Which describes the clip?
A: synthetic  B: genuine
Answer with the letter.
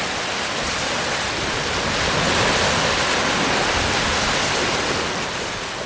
B